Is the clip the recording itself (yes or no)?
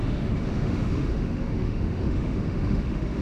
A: no